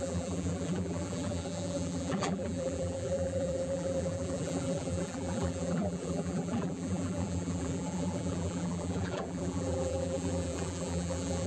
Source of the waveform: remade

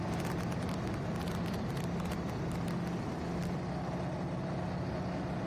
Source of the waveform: recorded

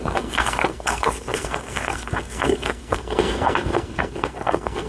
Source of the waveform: remade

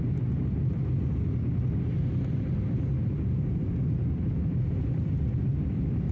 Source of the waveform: remade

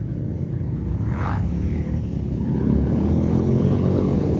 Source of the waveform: remade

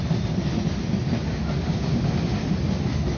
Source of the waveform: recorded